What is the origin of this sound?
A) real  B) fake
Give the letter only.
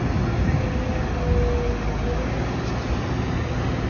A